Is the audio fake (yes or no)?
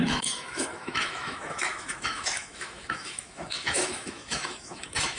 yes